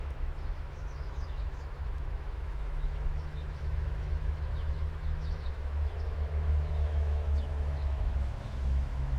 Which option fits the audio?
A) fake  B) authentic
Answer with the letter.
A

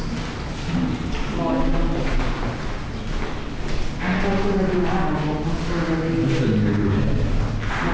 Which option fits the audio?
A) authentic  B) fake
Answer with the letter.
A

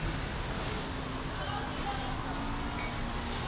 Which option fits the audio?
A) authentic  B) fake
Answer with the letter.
A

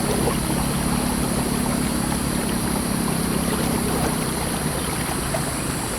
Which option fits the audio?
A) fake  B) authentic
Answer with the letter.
B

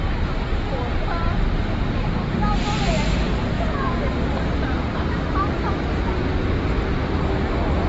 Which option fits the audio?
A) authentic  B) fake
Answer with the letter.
A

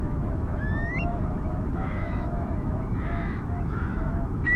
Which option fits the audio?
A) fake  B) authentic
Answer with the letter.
A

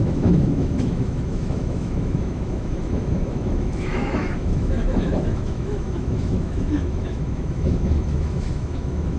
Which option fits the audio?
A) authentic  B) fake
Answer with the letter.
B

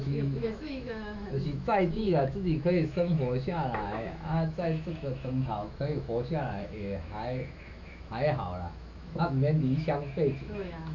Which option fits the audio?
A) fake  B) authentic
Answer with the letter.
A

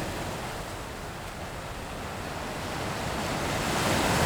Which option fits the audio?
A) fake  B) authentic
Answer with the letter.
B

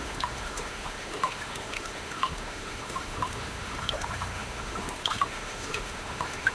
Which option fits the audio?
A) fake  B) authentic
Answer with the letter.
A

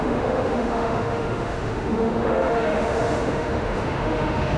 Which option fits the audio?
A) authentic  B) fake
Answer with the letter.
B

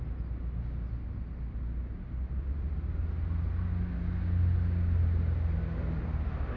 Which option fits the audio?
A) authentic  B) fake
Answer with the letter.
A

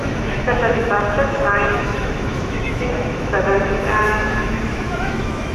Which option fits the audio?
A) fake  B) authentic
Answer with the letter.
A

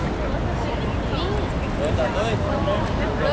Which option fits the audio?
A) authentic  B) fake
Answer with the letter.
A